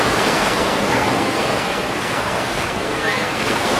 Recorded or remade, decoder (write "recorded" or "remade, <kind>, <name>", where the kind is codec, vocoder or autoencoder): remade, codec, SNAC